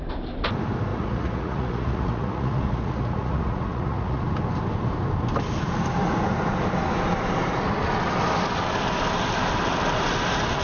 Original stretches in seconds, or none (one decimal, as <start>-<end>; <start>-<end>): 0.0-0.9; 4.2-10.6